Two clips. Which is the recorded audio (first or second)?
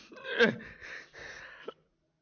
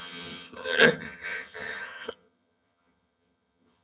first